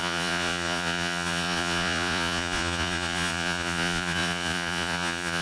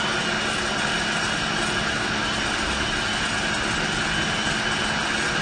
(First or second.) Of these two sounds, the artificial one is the first